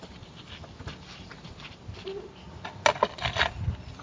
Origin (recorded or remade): recorded